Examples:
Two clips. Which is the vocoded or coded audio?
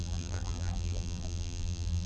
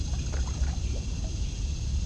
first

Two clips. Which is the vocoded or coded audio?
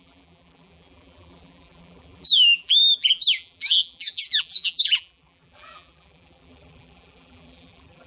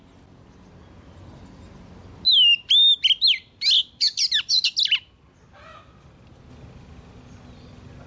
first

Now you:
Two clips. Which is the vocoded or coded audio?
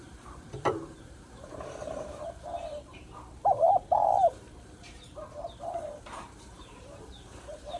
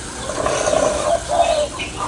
first